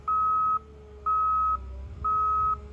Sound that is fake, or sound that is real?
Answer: real